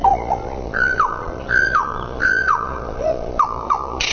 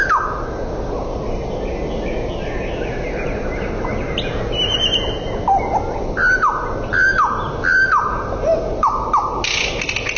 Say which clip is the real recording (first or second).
second